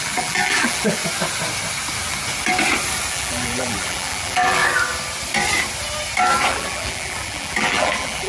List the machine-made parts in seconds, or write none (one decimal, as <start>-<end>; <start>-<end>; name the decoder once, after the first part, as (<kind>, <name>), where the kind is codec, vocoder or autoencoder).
0.0-1.0 (vocoder, BigVGAN v2); 3.1-4.6; 6.5-8.3